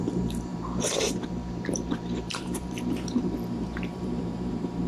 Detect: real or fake fake